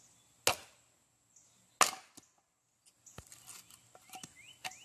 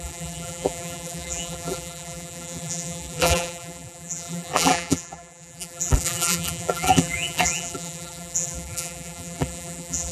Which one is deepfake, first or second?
second